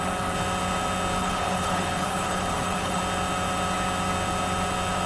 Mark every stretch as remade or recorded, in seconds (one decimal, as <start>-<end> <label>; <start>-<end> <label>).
0.0-1.2 recorded; 1.2-3.0 remade; 3.0-5.1 recorded